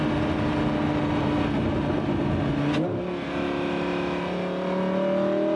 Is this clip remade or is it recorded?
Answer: recorded